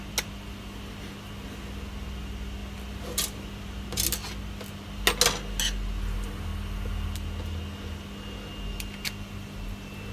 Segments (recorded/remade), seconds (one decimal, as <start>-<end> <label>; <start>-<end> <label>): 0.0-10.1 recorded